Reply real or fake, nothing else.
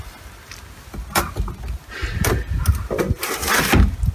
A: real